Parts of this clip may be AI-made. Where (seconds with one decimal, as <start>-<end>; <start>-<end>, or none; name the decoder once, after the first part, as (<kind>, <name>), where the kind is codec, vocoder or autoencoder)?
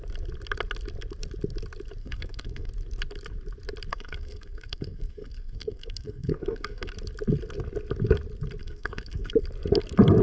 2.0-2.7 (codec, SNAC); 3.9-6.9; 8.6-9.3